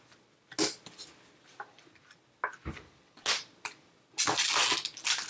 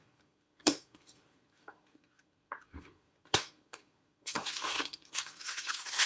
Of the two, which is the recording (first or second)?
first